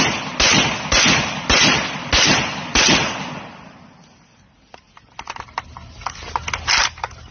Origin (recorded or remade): recorded